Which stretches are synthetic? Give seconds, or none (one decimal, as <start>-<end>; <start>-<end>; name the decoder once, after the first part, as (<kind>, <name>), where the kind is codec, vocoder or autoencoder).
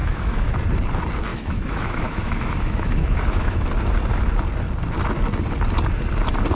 0.0-0.5 (autoencoder, DAC-VAE); 1.3-3.7